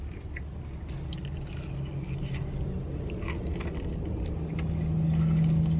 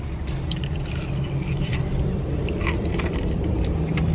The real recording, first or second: first